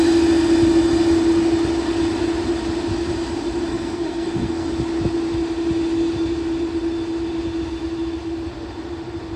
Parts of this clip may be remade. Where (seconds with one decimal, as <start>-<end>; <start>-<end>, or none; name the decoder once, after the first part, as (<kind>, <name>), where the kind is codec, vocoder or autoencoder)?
3.7-4.7 (codec, SNAC)